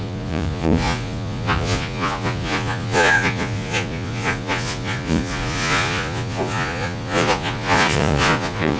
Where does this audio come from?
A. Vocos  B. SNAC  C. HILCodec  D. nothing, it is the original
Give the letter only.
A